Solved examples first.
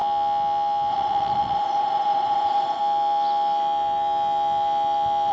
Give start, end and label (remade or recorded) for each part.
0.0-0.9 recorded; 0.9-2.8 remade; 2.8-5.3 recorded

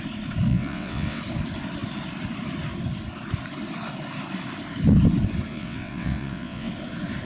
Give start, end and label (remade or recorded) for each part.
0.0-0.5 recorded; 0.5-1.2 remade; 1.2-5.5 recorded; 5.5-6.7 remade; 6.7-7.3 recorded

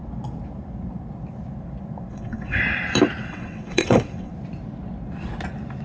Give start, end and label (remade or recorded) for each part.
0.0-2.1 recorded; 2.1-2.6 remade; 2.6-3.2 recorded; 3.2-4.3 remade; 4.3-5.8 recorded

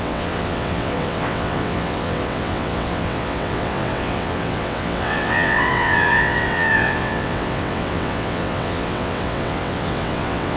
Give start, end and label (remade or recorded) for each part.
0.0-10.6 remade

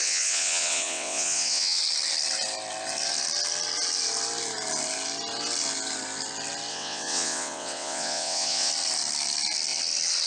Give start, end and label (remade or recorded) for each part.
0.0-1.8 remade; 1.8-6.7 recorded; 6.7-8.7 remade; 8.7-10.3 recorded

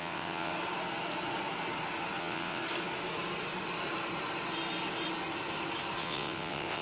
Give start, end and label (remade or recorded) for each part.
0.0-0.5 remade; 0.5-2.2 recorded; 2.2-2.6 remade; 2.6-6.0 recorded; 6.0-6.8 remade